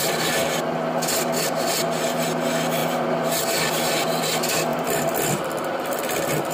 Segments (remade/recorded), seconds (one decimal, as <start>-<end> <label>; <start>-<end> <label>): 0.0-2.8 recorded; 2.8-3.4 remade; 3.4-4.7 recorded; 4.7-6.0 remade; 6.0-6.5 recorded